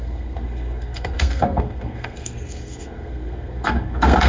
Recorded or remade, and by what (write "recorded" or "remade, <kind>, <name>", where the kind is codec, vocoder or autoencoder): remade, codec, SNAC